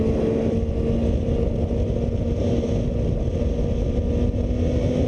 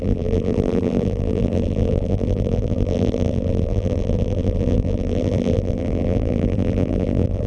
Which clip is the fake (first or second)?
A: second